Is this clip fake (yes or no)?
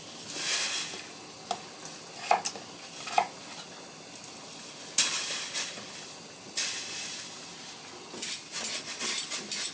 no